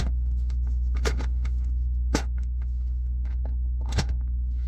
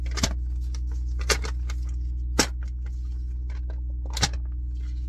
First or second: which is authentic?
second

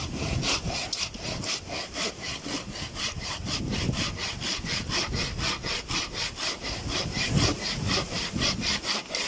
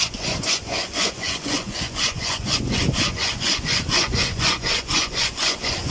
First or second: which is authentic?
first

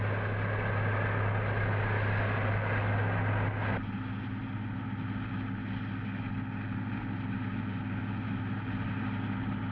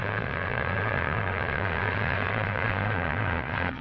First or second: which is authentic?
first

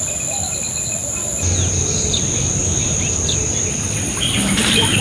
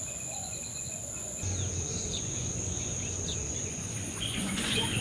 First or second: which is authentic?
first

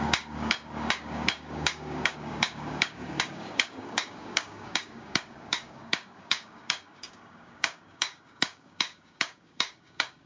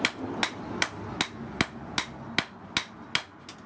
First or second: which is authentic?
second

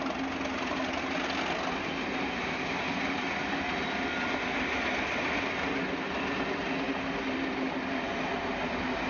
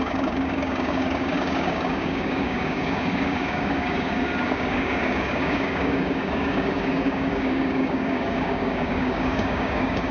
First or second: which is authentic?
first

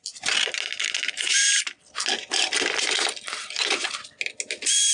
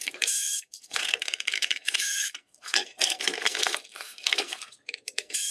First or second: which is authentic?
first